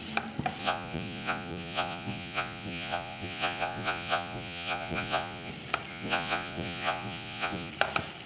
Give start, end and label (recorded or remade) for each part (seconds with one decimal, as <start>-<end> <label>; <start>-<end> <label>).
0.0-0.6 recorded; 0.6-5.5 remade; 5.5-5.9 recorded; 5.9-7.7 remade; 7.7-8.3 recorded